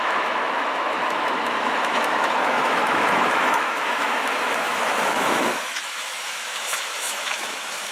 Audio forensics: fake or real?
fake